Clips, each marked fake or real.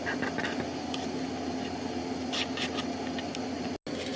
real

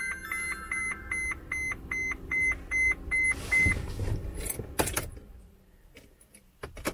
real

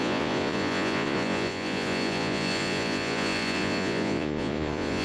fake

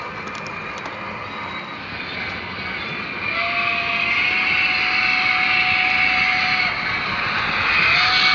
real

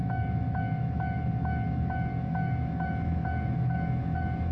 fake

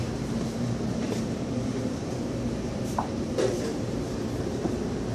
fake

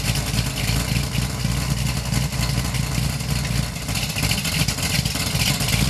real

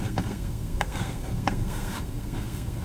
fake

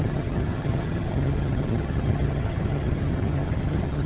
fake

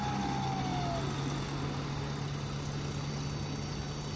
real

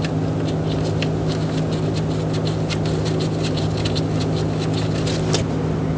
real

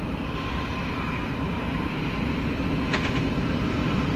fake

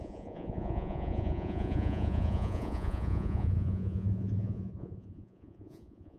fake